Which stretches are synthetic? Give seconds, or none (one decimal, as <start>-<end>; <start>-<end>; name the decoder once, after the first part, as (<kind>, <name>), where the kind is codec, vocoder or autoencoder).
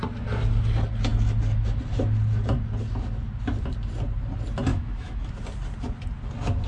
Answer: 4.7-5.3 (autoencoder, DAC-VAE)